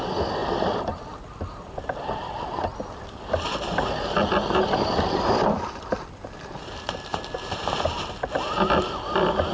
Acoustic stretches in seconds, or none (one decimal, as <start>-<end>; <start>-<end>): 2.7-6.4; 7.1-8.1

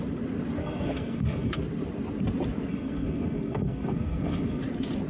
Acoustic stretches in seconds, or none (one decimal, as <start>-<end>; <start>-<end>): 0.0-0.6; 1.6-2.7; 4.6-5.1